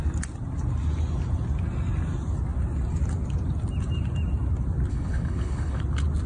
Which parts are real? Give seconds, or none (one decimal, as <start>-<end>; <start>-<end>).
0.0-4.9; 5.8-6.3